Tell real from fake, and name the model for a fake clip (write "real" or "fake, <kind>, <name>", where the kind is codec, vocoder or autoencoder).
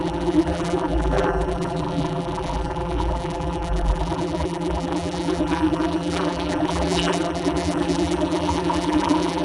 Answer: fake, vocoder, BigVGAN v2